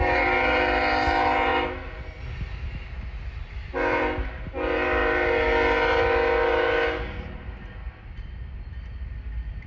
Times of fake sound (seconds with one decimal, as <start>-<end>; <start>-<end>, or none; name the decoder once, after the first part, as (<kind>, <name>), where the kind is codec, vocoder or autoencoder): none